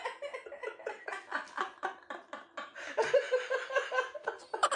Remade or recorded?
recorded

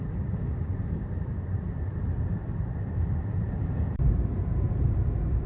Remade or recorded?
remade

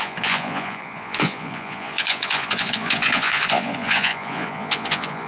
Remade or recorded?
remade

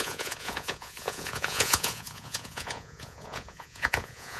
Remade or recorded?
remade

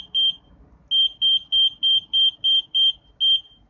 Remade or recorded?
recorded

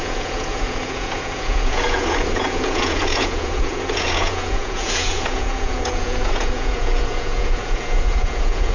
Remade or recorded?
remade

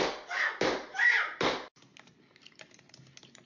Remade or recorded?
remade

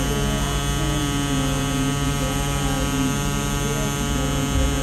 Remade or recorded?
recorded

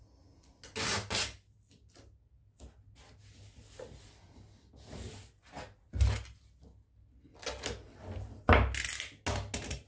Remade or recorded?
recorded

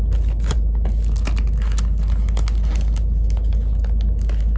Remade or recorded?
recorded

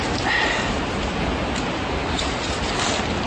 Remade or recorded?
recorded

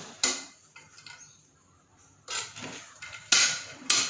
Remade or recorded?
remade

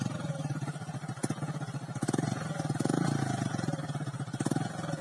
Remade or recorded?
recorded